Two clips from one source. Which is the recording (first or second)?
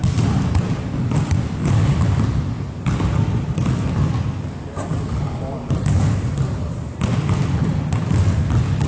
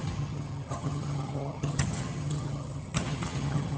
first